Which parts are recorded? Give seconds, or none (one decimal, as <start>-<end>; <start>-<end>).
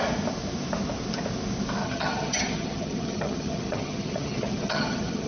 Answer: 0.0-1.8